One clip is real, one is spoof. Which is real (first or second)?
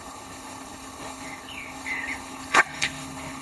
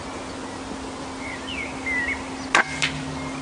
second